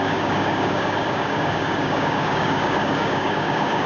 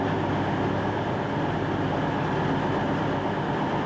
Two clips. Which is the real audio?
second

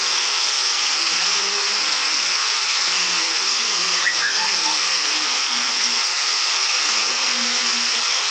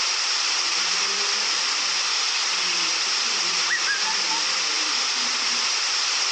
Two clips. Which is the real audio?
second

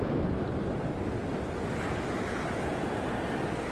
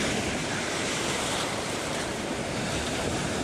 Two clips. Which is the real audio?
first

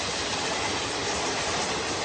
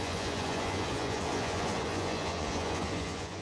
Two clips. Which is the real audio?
first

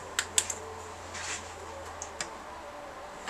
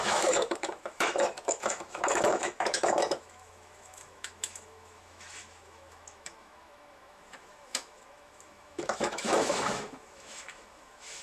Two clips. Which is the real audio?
first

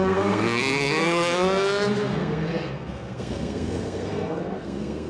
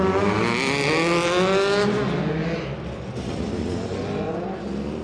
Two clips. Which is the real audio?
second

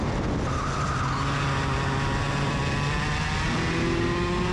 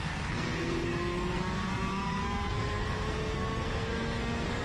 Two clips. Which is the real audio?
first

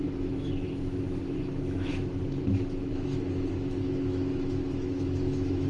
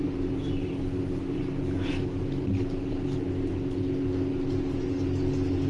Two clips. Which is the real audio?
second